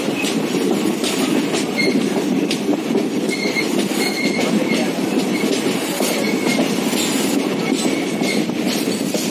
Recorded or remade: recorded